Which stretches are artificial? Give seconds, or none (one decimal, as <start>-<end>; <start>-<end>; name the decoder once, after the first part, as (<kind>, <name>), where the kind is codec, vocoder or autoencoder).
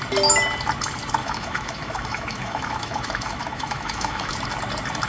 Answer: 1.2-4.3 (autoencoder, DAC-VAE)